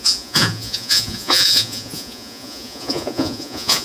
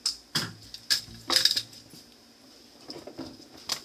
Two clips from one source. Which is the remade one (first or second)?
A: first